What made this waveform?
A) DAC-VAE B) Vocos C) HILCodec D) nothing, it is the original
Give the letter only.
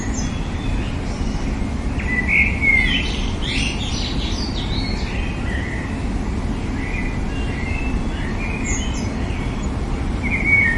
D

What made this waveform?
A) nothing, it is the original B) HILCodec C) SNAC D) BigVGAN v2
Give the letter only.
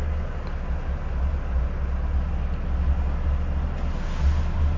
A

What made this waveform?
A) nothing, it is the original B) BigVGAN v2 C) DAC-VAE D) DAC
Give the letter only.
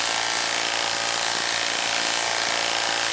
A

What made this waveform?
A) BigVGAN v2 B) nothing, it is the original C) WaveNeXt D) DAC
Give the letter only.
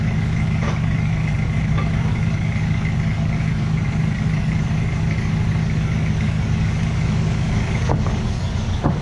D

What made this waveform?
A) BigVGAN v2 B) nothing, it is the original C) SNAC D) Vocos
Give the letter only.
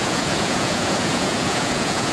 D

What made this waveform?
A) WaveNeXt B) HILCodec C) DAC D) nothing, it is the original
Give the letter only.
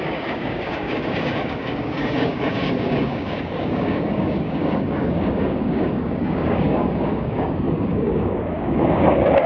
C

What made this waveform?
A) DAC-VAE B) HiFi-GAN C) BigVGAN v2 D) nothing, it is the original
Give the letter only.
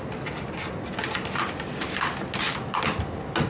D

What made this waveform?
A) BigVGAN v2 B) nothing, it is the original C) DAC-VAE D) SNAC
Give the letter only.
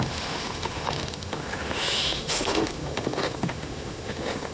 C